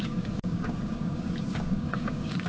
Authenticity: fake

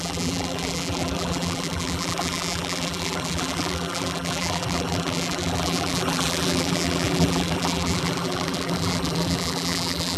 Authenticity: fake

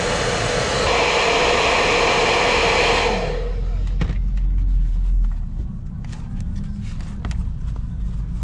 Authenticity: real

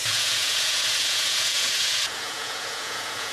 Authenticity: fake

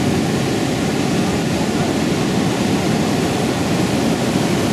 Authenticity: real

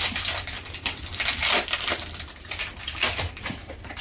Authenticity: real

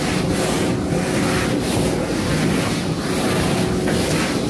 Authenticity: real